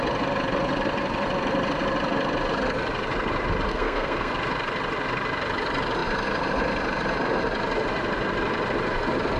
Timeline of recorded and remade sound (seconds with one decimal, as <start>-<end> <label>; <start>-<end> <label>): 0.0-3.7 recorded; 3.7-4.3 remade; 4.3-9.4 recorded